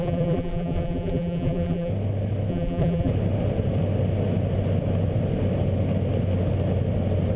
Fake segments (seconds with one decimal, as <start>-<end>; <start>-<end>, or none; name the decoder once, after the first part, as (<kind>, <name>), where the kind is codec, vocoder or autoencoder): 0.0-1.9 (vocoder, BigVGAN v2); 2.5-3.1